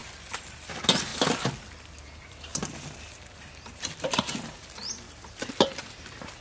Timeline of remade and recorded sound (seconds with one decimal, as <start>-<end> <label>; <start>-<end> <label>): 0.0-1.1 remade; 1.1-2.0 recorded; 2.0-6.4 remade